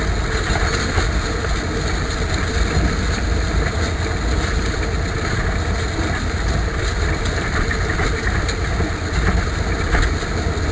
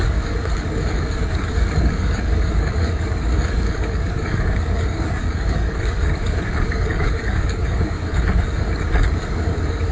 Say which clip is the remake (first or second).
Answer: second